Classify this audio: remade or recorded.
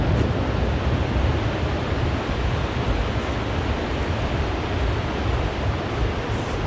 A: recorded